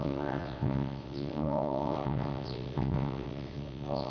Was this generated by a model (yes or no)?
yes